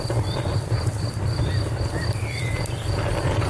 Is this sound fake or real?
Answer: real